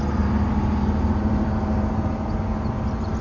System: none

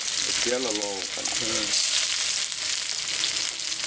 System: none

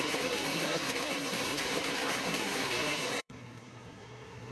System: codec, SNAC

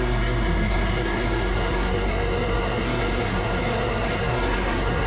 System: codec, SNAC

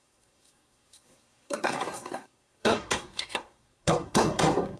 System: codec, SNAC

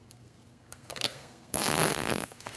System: codec, SNAC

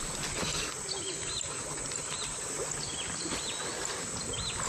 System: none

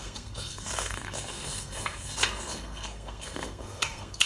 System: codec, SNAC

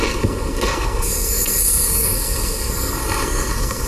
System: codec, SNAC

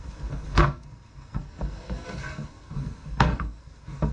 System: codec, SNAC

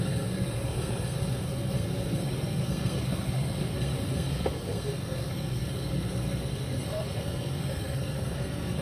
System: codec, SNAC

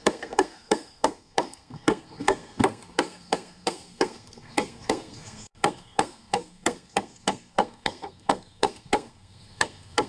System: codec, SNAC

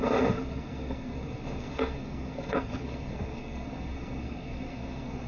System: codec, SNAC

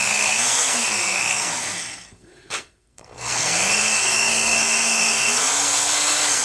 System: codec, SNAC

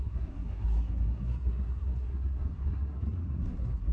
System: codec, SNAC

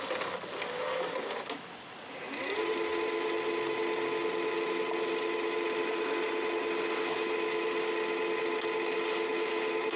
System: none